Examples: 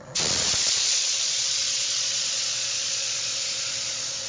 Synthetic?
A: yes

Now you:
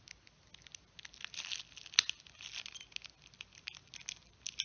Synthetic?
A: no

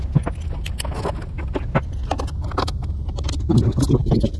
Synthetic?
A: no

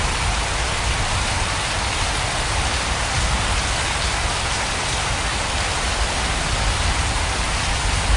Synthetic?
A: no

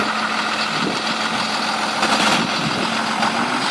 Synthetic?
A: no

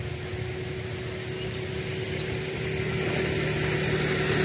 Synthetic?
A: no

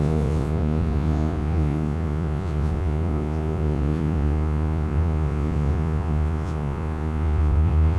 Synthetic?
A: yes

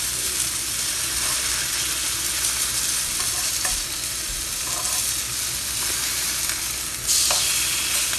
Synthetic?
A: no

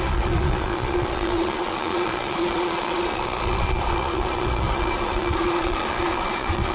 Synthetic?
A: yes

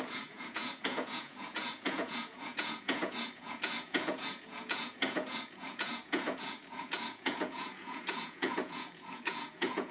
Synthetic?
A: yes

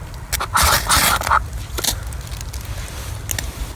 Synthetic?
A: no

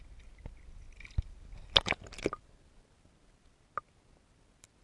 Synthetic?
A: no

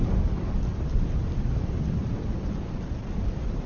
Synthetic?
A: no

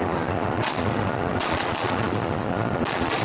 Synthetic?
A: yes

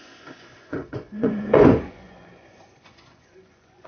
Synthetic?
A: yes